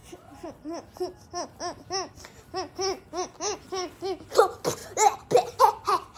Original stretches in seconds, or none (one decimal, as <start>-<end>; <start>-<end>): 0.0-6.2